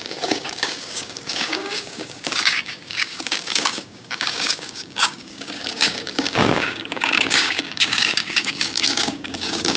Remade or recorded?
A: remade